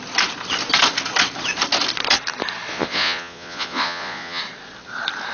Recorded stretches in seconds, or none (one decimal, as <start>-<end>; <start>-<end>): 0.0-2.7; 4.4-5.3